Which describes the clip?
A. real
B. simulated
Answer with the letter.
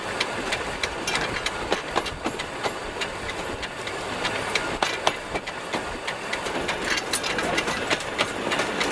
A